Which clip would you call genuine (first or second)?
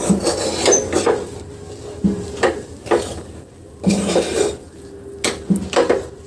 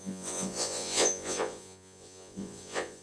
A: first